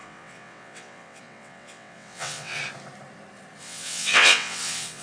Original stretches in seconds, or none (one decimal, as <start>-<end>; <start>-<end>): 2.6-3.6